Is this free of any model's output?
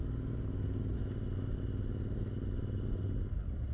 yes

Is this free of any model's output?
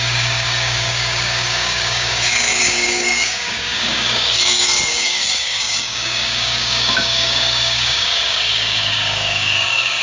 no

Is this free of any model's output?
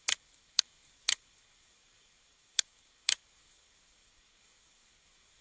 no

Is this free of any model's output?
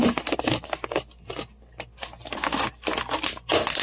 yes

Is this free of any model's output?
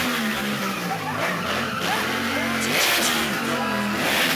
yes